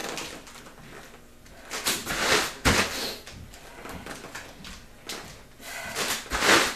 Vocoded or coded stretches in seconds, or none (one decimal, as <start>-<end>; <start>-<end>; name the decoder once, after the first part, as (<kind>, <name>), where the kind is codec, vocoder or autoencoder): none